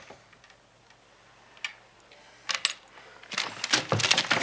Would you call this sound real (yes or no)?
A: yes